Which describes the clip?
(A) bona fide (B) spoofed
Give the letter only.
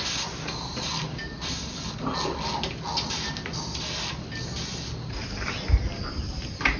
A